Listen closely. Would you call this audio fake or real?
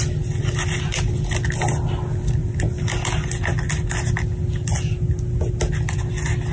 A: real